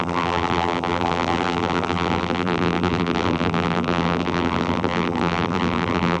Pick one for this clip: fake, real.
fake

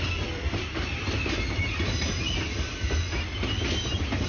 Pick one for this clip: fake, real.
real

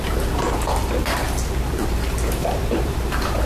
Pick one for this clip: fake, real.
fake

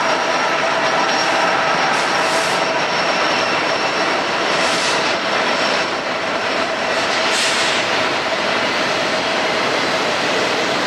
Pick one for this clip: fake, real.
fake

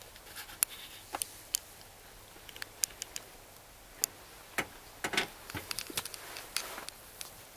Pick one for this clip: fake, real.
real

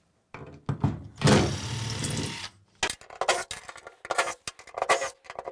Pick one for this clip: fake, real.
real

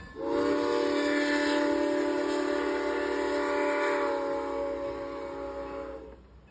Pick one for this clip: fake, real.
real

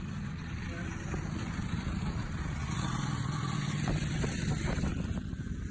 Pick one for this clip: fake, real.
fake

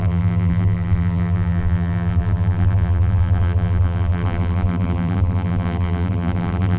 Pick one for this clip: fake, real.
fake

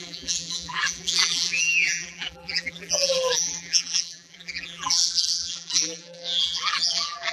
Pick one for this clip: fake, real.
fake